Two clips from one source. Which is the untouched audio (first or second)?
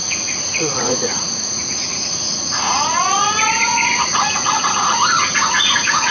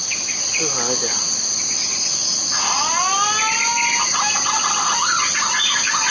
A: second